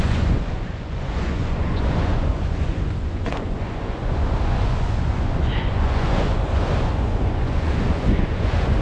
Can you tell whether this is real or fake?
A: fake